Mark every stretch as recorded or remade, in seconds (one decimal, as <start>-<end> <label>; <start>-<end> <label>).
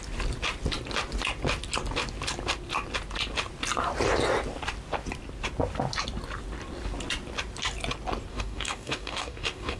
0.0-8.3 recorded; 8.3-9.8 remade